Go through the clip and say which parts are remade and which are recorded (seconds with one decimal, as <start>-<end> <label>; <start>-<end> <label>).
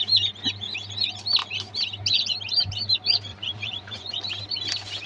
0.0-3.3 recorded; 3.3-4.2 remade; 4.2-5.1 recorded